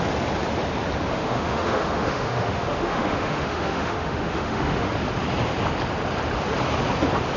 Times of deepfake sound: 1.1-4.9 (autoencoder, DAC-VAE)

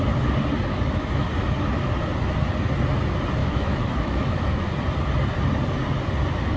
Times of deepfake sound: 0.7-1.3 (autoencoder, DAC-VAE); 3.4-4.7

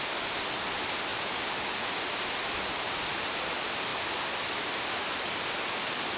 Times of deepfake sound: none

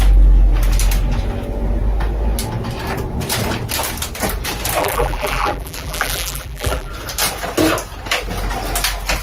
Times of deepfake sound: 4.8-6.9 (vocoder, BigVGAN v2)

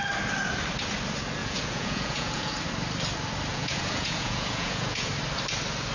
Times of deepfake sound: 1.4-2.5 (vocoder, Vocos); 3.5-5.1

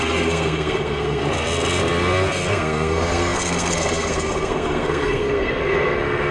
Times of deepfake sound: 0.0-1.2 (codec, SNAC); 2.5-6.3